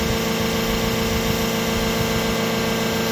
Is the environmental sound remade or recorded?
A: recorded